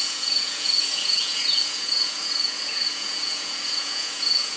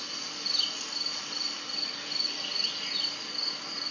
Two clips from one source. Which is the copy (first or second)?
first